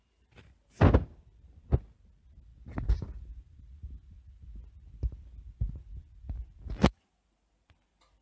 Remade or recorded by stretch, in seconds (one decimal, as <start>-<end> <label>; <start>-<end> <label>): 0.0-8.2 recorded